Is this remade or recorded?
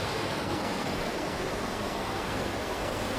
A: remade